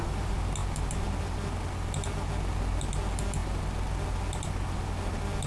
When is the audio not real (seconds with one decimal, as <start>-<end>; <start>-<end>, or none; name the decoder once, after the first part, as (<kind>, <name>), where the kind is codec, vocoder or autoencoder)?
none